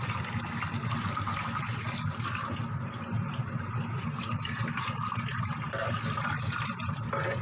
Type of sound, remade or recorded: recorded